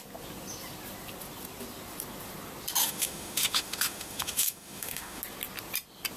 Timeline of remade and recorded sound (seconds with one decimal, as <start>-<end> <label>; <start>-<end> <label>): 0.0-2.8 recorded; 2.8-5.2 remade; 5.2-6.2 recorded